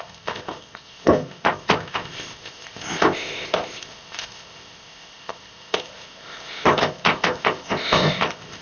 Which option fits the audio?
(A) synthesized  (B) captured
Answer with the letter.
A